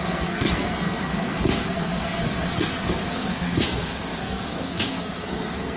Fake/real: fake